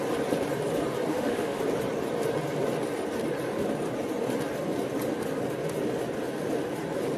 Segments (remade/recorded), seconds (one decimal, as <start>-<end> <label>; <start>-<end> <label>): 0.0-1.1 recorded; 1.1-1.6 remade; 1.6-7.2 recorded